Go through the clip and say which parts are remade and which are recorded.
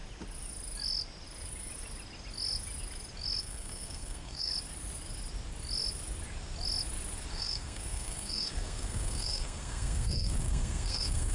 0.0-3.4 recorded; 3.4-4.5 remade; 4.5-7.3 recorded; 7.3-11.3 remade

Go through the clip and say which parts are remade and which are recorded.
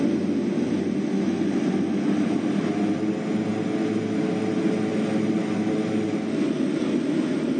0.0-7.6 recorded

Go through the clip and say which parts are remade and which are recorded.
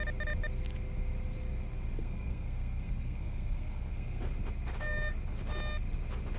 0.0-2.0 recorded; 2.0-4.2 remade; 4.2-6.4 recorded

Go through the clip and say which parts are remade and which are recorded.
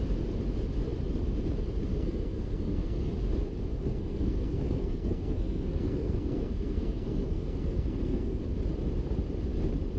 0.0-1.9 recorded; 1.9-3.1 remade; 3.1-3.7 recorded; 3.7-8.4 remade; 8.4-10.0 recorded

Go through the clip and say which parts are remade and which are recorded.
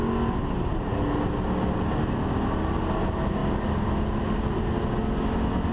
0.0-5.7 recorded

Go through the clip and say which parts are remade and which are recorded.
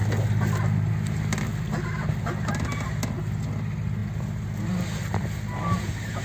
0.0-6.2 recorded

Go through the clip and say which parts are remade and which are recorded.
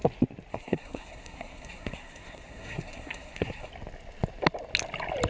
0.0-0.5 recorded; 0.5-3.7 remade; 3.7-5.3 recorded